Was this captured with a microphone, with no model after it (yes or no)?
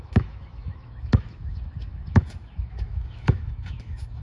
no